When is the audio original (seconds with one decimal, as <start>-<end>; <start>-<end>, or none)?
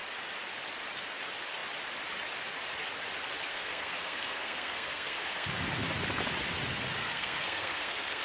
0.0-3.5; 5.5-7.0